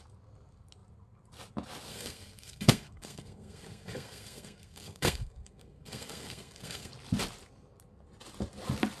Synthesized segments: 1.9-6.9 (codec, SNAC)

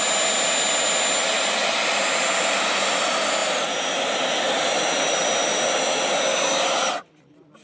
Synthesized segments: none